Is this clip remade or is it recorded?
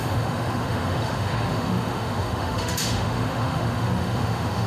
remade